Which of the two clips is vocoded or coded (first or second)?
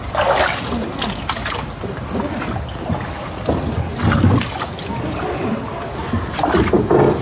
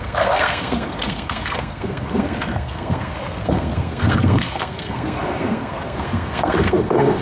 second